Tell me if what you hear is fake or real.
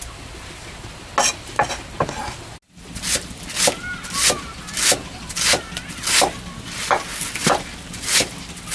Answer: real